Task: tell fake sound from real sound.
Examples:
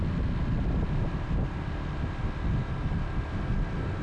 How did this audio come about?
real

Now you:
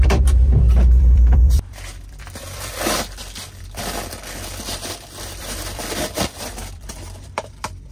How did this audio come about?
fake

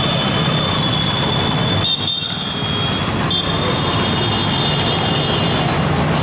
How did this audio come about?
real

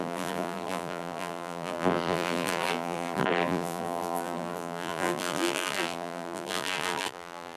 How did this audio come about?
fake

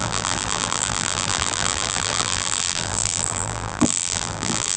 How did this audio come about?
fake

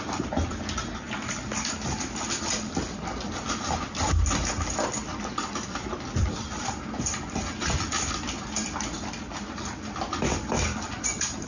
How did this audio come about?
fake